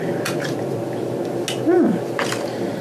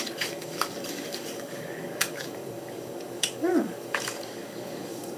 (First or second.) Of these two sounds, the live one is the first